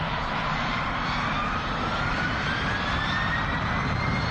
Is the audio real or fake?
real